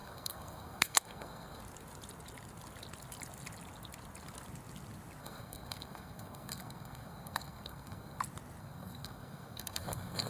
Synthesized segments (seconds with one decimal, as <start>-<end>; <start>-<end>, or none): 0.0-1.6; 5.2-8.2; 8.6-10.3